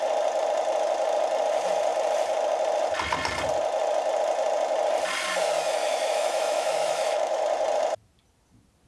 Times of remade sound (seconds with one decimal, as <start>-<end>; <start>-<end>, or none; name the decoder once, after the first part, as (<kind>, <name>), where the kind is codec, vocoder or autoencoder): 5.8-7.4 (autoencoder, DAC-VAE)